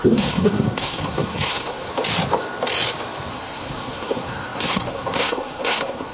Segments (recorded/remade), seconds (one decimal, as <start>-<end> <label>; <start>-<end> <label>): 0.0-1.9 remade; 1.9-3.3 recorded; 3.3-6.1 remade